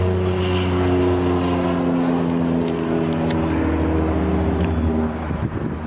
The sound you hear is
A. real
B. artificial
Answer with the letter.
A